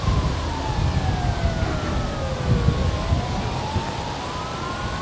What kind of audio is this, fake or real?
real